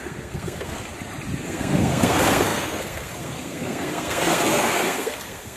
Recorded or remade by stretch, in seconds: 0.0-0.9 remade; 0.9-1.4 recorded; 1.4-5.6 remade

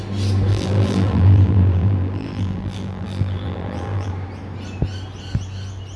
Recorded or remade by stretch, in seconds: 0.0-0.5 recorded; 0.5-4.1 remade; 4.1-6.0 recorded

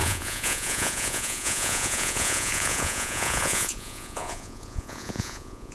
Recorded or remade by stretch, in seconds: 0.0-5.7 remade

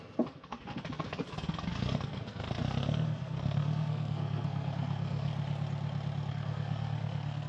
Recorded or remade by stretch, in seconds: 0.0-5.3 remade; 5.3-6.3 recorded; 6.3-7.5 remade

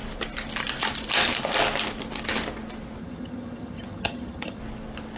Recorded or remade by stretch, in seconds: 0.0-3.0 recorded; 3.0-4.6 remade; 4.6-5.2 recorded

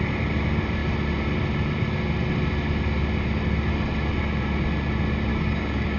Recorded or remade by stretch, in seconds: 0.0-5.3 recorded; 5.3-6.0 remade